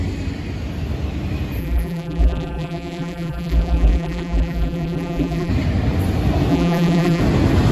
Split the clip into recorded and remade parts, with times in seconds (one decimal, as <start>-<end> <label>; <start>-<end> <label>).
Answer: 0.0-1.6 recorded; 1.6-5.5 remade; 5.5-6.5 recorded; 6.5-7.2 remade; 7.2-7.7 recorded